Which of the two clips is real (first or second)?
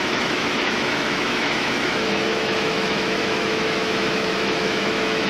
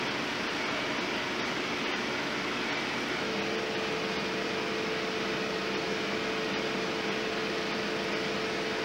second